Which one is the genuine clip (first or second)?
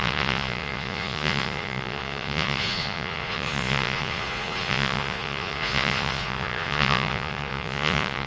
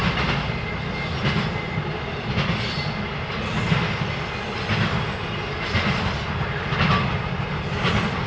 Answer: second